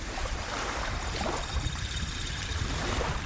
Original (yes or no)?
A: no